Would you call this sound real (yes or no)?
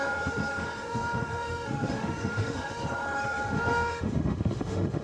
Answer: no